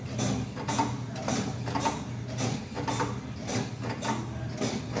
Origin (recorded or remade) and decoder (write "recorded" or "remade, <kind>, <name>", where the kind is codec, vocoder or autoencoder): recorded